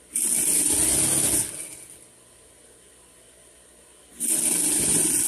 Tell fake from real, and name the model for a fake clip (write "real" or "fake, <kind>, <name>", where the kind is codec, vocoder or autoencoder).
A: real